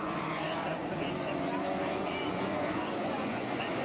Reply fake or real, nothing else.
fake